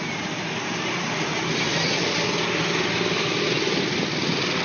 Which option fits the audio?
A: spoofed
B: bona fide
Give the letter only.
B